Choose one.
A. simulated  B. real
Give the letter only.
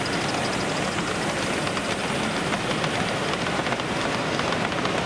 B